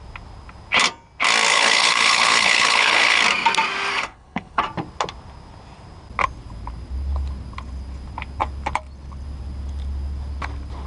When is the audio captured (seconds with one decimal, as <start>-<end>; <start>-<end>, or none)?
0.0-1.5; 3.2-3.9; 4.6-10.9

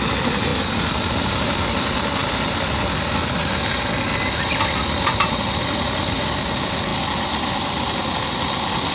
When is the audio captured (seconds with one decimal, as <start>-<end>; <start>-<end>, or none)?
0.0-8.9

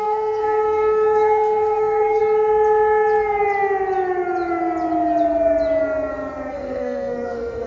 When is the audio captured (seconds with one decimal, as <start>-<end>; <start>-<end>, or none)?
2.2-6.5

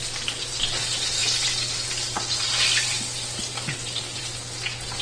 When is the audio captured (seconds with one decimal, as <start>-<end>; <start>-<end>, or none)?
0.0-5.0

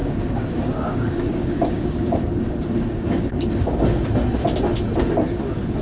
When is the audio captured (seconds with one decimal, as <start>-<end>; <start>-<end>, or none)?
3.5-5.8